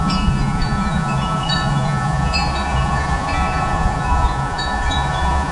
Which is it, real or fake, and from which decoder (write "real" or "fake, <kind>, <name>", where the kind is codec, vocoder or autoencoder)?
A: fake, vocoder, Vocos